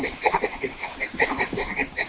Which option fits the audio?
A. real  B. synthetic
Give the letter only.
B